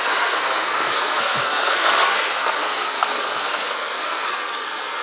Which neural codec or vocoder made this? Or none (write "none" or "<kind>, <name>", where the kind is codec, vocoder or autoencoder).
codec, SNAC